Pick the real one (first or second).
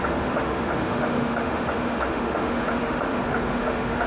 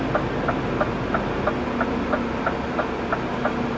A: second